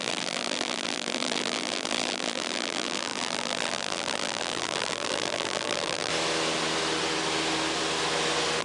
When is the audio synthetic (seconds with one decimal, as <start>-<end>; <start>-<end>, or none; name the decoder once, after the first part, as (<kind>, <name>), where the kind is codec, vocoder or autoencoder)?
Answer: 0.0-6.1 (vocoder, BigVGAN v2)